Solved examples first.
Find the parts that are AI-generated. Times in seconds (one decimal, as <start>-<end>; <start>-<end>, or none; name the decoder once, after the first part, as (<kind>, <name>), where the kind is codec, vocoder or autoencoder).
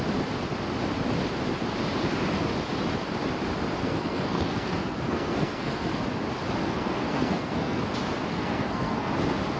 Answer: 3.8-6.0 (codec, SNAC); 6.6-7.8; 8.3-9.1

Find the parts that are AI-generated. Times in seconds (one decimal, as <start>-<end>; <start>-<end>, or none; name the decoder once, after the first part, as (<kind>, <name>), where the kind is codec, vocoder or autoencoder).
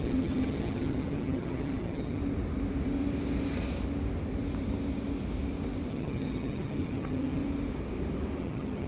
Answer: 0.0-2.2 (vocoder, HiFi-GAN); 5.9-7.4; 8.4-8.9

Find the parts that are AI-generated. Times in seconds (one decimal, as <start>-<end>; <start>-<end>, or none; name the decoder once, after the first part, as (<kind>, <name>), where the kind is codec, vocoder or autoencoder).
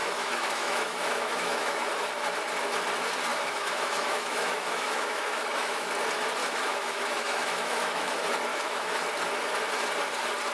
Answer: 0.0-1.9 (autoencoder, DAC-VAE); 3.3-5.9; 6.4-8.1; 8.5-9.0